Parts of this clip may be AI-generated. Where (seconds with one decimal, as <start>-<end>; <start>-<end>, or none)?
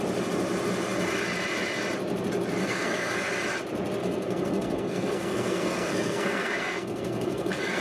2.6-3.3; 4.0-7.8